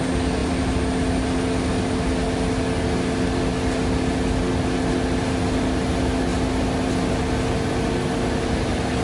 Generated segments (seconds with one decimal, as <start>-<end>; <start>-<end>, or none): none